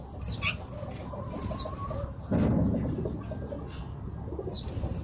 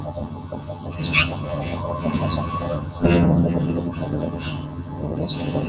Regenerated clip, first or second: second